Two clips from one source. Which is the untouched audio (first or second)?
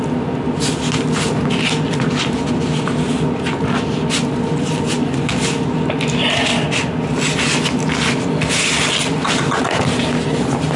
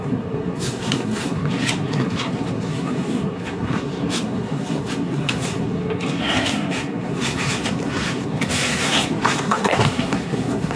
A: first